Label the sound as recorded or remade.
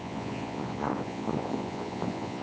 remade